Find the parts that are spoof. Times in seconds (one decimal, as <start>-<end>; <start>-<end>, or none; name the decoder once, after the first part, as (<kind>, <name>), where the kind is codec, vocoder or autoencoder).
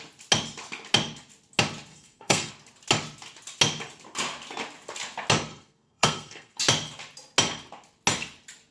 1.9-2.5 (codec, SNAC); 5.5-6.6